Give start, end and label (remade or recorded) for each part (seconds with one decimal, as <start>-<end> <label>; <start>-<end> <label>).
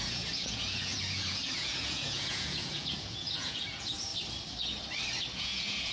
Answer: 0.0-4.1 remade; 4.1-5.4 recorded; 5.4-5.9 remade